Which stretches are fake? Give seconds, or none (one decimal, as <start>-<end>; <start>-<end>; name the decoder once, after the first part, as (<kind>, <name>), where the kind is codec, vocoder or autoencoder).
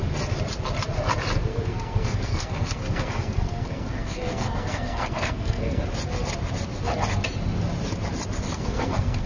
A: 1.5-5.8 (codec, SNAC); 8.5-9.3